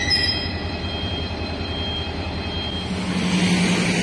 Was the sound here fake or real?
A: real